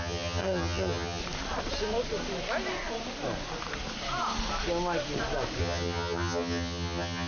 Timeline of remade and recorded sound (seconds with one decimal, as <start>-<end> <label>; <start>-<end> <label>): 0.0-1.2 remade; 1.2-5.6 recorded; 5.6-7.3 remade